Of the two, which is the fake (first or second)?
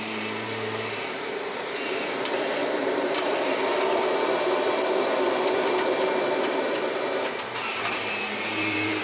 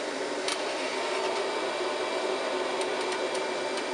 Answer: first